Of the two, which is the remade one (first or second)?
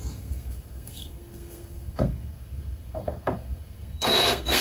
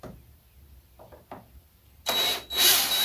first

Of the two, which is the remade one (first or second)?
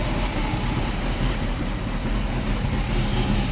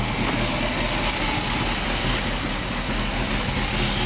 first